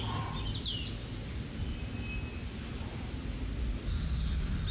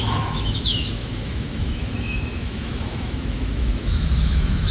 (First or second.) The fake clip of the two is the second